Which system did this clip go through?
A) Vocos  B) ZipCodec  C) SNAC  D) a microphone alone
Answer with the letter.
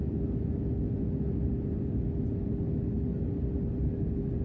D